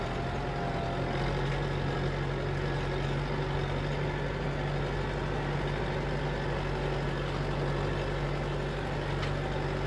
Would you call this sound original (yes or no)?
yes